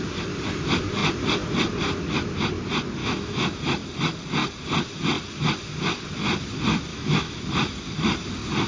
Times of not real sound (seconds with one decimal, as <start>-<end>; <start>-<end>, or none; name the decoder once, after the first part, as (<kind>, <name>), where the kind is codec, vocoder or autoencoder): 3.0-3.6 (autoencoder, DAC-VAE); 6.9-7.4